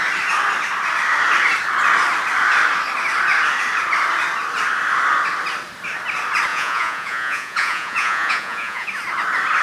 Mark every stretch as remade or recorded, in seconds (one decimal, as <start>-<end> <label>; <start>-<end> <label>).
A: 0.0-6.5 recorded; 6.5-8.9 remade; 8.9-9.6 recorded